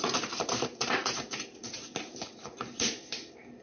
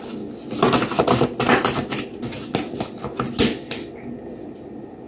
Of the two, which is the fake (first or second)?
first